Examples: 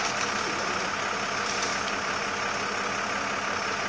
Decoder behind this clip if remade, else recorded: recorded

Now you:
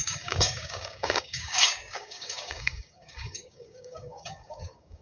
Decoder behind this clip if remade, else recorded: remade, codec, DAC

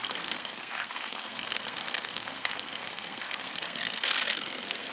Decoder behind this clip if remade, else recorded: remade, codec, SNAC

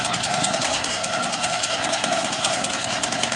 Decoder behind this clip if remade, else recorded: remade, codec, SNAC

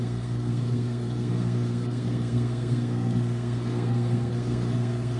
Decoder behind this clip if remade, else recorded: remade, codec, SNAC